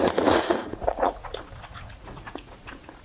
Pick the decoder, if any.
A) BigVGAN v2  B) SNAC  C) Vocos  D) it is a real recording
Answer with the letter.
C